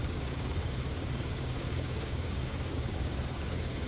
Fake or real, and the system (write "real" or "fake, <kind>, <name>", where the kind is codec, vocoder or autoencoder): fake, codec, DAC